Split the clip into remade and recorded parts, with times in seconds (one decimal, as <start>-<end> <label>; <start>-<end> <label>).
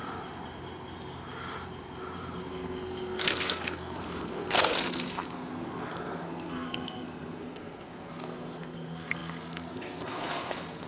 0.0-2.5 recorded; 2.5-10.9 remade